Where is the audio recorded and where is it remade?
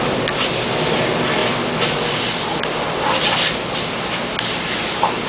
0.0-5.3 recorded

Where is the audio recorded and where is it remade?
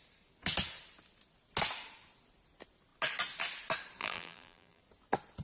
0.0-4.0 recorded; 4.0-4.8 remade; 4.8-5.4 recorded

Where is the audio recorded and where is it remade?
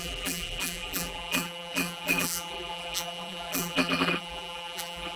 0.0-5.2 remade